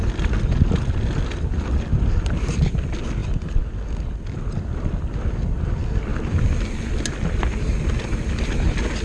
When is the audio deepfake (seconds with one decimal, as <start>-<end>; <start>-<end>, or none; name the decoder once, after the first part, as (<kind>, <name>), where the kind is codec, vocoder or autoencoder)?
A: none